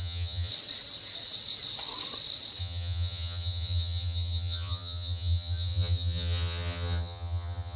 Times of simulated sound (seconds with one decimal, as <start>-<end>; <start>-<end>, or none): 0.0-0.5; 2.6-7.8

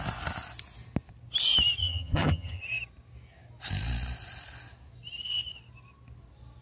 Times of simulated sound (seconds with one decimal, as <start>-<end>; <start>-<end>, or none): 1.8-2.6

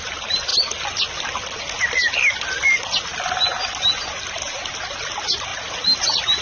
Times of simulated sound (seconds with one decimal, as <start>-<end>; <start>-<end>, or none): none